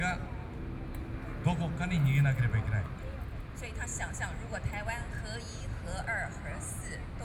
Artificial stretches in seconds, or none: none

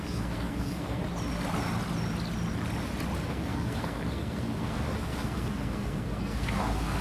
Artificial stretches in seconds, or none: 0.0-1.0 (codec, SNAC); 3.3-7.0

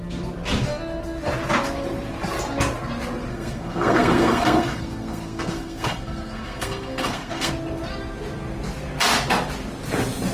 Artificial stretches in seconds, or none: 3.3-7.5 (codec, SNAC)

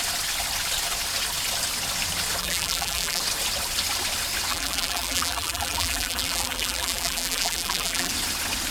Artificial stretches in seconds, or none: 2.4-3.2 (vocoder, BigVGAN v2); 4.5-8.1

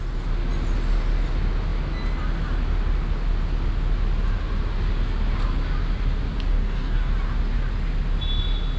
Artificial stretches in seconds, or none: 6.5-7.1 (codec, DAC)